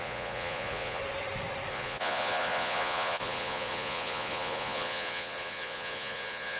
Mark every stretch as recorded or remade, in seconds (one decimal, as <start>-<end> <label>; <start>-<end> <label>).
0.0-1.0 remade; 1.0-1.7 recorded; 1.7-6.6 remade